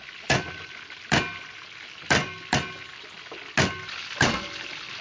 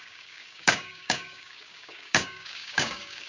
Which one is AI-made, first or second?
second